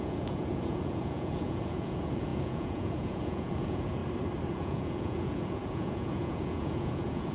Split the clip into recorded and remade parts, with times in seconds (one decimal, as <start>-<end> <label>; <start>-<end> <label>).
0.0-4.0 remade; 4.0-4.5 recorded; 4.5-7.3 remade